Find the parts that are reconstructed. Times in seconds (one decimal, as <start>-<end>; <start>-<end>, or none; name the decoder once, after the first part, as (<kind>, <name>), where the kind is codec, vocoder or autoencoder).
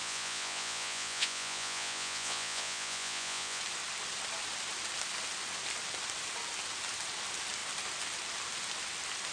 0.0-3.6 (vocoder, Vocos)